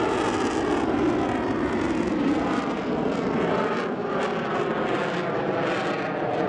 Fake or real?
real